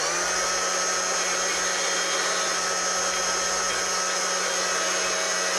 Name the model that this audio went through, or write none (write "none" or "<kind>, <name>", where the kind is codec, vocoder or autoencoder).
none